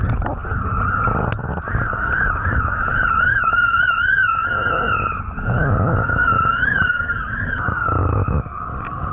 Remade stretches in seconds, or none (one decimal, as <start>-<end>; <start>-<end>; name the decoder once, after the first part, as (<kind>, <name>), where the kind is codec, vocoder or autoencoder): none